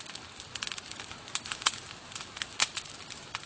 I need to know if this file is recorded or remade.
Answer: recorded